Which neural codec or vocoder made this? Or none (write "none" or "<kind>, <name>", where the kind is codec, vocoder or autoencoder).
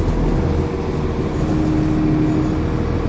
none